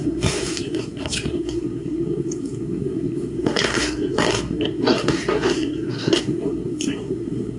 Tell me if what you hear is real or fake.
fake